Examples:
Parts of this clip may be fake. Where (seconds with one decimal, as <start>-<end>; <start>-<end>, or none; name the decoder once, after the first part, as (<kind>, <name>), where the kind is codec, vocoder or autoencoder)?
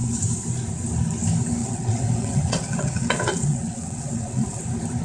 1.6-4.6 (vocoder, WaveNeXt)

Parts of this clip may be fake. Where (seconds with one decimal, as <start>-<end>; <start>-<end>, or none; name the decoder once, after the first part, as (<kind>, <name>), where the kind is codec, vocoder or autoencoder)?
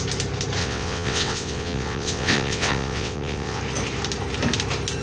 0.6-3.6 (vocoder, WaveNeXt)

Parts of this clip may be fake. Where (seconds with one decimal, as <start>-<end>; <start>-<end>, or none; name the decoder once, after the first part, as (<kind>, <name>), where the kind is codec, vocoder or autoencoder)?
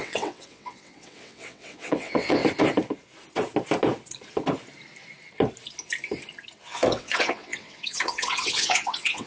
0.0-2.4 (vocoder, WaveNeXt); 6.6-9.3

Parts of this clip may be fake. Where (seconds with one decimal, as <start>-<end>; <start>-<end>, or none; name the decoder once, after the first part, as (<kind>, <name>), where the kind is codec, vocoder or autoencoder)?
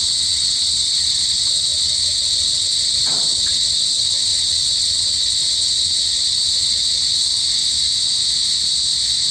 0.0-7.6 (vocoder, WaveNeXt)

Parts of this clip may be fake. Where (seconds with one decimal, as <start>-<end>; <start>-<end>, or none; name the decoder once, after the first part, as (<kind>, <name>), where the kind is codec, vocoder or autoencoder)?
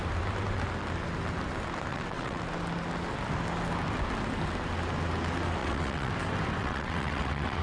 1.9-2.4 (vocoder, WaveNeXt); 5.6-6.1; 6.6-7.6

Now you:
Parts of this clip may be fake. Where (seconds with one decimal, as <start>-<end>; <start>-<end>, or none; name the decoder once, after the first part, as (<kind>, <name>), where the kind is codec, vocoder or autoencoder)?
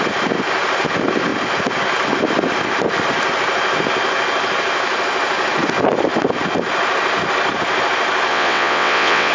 8.3-9.3 (vocoder, WaveNeXt)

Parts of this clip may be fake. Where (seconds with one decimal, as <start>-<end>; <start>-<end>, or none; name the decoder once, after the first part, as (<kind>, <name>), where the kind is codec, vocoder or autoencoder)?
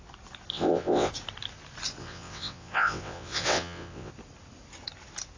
0.5-1.1 (vocoder, WaveNeXt); 2.0-4.1